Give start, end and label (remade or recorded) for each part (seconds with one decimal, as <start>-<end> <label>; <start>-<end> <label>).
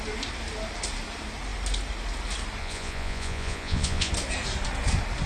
0.0-2.6 recorded; 2.6-4.1 remade; 4.1-5.3 recorded